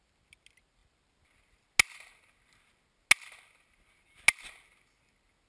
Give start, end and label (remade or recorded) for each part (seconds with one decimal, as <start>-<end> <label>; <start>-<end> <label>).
0.0-5.5 recorded

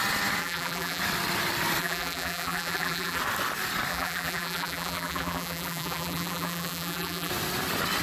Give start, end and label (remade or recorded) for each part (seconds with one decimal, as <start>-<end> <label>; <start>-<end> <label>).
0.0-0.4 recorded; 0.4-1.0 remade; 1.0-1.8 recorded; 1.8-3.2 remade; 3.2-3.9 recorded; 3.9-7.3 remade; 7.3-8.0 recorded

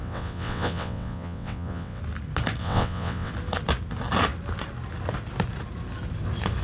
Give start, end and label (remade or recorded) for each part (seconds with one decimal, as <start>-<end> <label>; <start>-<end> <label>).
0.0-2.0 remade; 2.0-2.6 recorded; 2.6-3.3 remade; 3.3-6.6 recorded